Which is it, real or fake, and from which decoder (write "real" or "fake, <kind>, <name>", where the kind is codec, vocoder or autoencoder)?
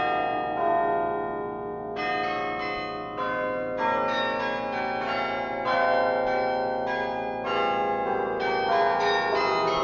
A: real